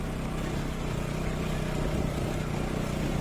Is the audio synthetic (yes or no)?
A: no